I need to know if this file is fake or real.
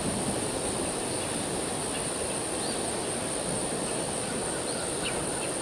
real